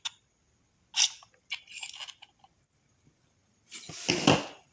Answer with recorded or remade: recorded